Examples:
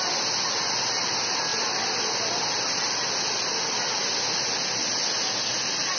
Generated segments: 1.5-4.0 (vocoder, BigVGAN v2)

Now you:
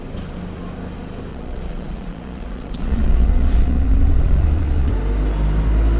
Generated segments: 1.3-4.9 (vocoder, Vocos)